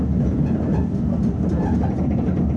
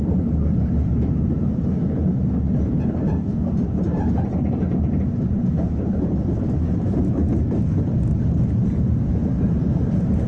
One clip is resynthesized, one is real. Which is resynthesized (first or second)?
second